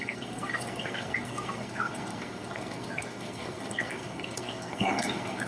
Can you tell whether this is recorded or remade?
remade